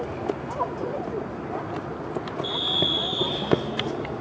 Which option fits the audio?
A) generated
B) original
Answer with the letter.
B